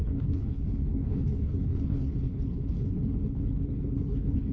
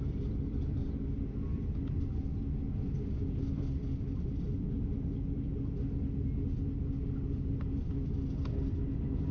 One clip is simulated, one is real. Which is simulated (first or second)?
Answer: first